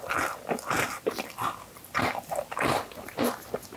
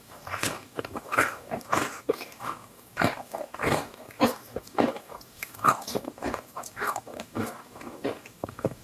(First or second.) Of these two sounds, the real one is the first